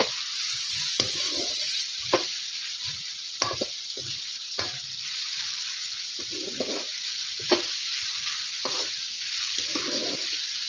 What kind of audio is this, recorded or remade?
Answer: remade